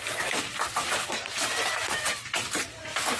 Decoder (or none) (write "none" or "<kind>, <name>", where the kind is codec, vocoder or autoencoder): none